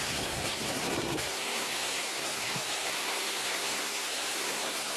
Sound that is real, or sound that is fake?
fake